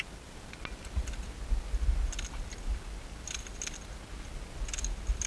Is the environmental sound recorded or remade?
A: recorded